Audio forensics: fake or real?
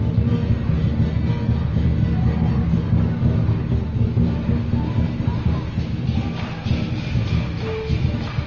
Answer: real